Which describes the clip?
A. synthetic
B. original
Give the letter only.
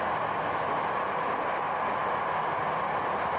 B